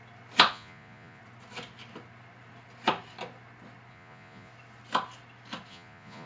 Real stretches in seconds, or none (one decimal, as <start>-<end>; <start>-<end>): 0.0-0.5; 1.2-3.9; 4.5-5.7